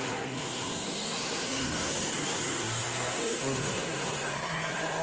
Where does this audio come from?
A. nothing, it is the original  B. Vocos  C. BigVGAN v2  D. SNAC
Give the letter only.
D